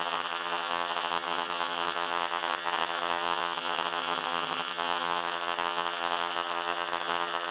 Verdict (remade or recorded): remade